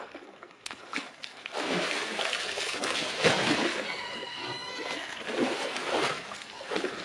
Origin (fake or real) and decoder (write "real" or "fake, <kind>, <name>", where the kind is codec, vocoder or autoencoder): fake, codec, SNAC